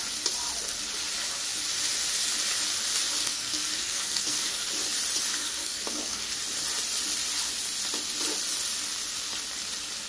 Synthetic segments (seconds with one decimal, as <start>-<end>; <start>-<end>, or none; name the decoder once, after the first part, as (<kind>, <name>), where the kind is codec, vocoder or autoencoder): 3.2-4.7 (codec, SNAC); 5.3-6.3